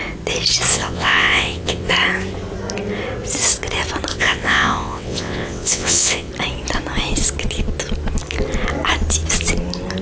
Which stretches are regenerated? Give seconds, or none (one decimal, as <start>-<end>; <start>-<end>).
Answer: 0.7-1.9; 4.1-6.3